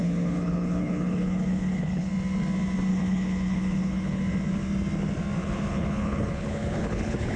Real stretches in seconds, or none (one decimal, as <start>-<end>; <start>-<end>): 2.1-2.9; 4.2-5.4